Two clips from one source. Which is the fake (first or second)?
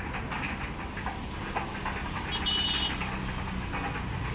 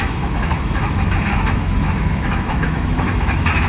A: second